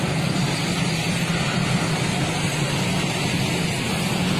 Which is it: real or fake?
real